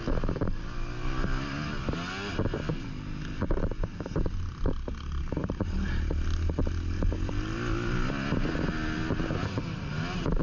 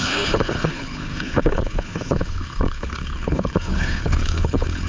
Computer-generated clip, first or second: second